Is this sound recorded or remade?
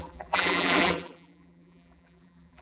remade